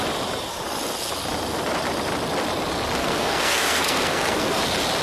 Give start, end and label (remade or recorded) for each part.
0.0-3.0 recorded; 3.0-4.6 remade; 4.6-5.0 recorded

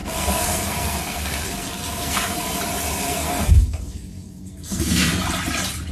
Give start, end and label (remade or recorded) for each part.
0.0-2.6 remade; 2.6-3.0 recorded; 3.0-5.2 remade; 5.2-5.9 recorded

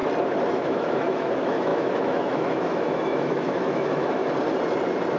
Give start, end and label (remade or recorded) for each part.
0.0-0.5 recorded; 0.5-4.2 remade; 4.2-5.2 recorded